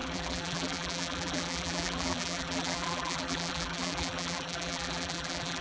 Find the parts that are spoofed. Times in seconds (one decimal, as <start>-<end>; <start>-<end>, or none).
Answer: 0.0-5.6